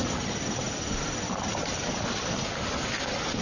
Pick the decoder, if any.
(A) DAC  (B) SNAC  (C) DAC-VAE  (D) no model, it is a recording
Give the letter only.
D